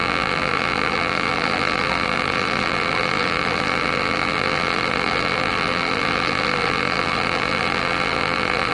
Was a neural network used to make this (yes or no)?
yes